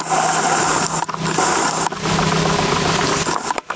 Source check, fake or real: real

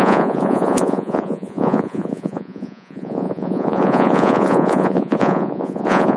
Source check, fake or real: fake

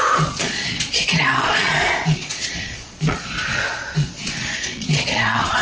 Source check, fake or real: fake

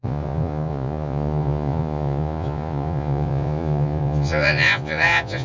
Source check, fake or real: fake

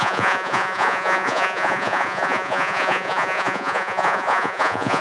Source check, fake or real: fake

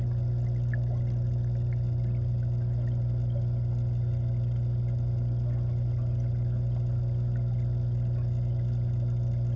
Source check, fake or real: real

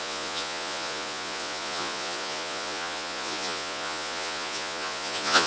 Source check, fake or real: fake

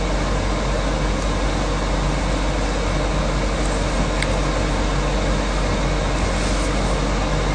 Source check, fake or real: real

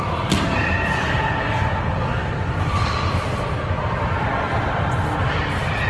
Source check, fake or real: real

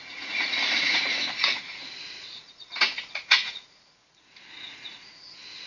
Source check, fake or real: fake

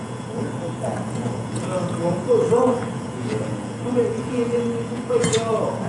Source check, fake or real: fake